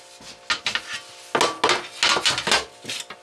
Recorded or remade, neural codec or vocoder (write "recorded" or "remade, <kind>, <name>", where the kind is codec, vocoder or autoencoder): recorded